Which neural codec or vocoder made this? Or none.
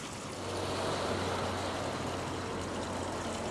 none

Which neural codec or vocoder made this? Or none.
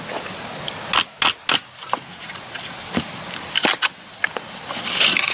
none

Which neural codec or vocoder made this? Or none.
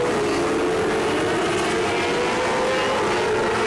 none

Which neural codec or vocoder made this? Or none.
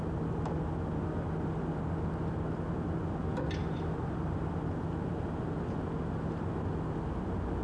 none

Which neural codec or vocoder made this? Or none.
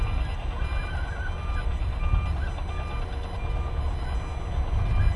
none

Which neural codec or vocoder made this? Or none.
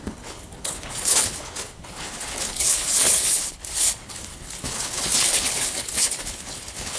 codec, HILCodec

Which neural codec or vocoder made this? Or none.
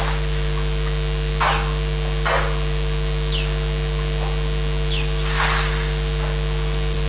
none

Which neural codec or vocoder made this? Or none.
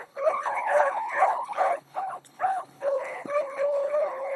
codec, HILCodec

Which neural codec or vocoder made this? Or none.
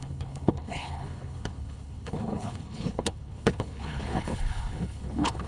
codec, HILCodec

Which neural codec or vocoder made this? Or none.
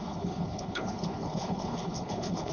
codec, HILCodec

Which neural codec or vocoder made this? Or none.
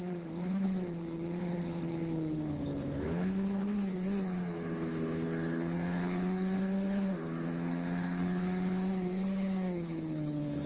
codec, HILCodec